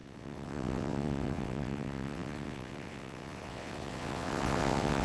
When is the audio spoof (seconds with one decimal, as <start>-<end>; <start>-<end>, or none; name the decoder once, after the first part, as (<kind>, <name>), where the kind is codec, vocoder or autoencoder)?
0.0-5.0 (vocoder, WaveNeXt)